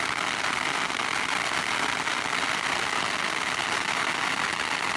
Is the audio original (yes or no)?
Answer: yes